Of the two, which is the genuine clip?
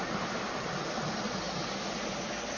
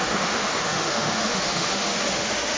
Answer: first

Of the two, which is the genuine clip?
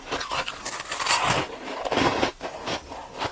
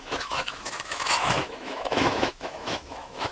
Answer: first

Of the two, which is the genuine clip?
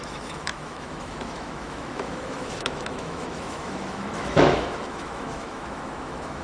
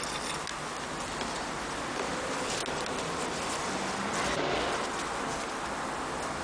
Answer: second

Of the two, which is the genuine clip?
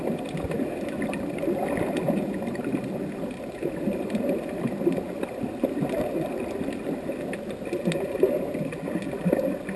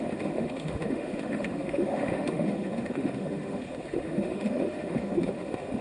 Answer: first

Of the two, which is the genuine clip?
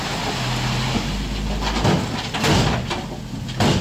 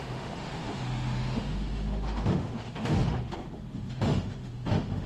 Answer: first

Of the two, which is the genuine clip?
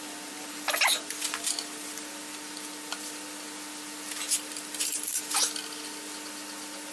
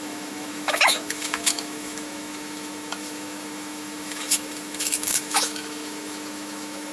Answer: first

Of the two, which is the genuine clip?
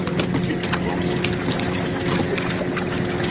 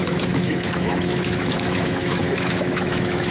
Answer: first